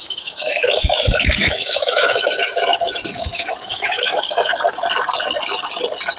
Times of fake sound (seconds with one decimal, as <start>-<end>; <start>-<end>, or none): 0.0-4.5